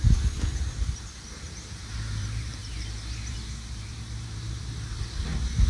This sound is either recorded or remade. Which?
remade